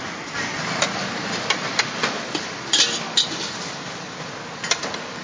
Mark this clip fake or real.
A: real